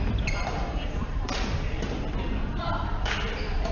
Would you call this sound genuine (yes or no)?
no